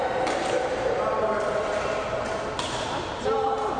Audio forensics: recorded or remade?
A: remade